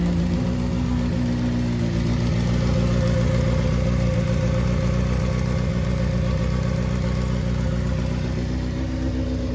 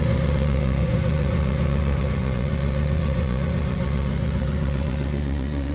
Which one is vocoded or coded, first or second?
second